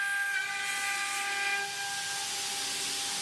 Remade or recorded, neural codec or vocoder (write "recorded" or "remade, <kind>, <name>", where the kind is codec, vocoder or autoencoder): recorded